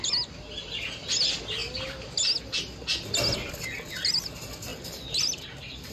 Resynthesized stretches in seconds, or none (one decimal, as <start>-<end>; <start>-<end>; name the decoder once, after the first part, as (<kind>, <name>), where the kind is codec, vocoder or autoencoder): none